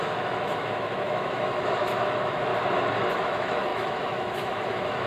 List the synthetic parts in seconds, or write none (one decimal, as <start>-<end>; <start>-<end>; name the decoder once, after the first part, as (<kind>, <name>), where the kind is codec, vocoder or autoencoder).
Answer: 0.0-2.5 (autoencoder, DAC-VAE); 3.1-5.1